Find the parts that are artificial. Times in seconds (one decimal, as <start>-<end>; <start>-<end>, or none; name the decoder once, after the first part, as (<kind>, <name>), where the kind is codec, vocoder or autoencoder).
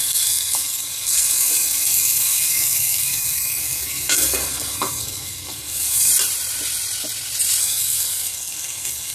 0.0-6.1 (codec, SNAC); 7.6-9.1